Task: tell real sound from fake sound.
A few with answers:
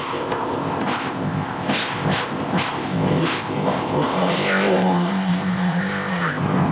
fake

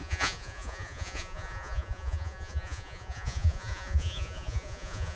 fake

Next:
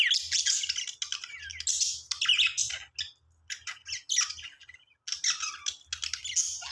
real